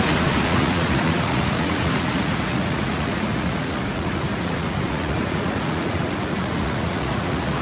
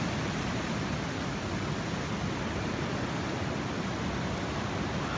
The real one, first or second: second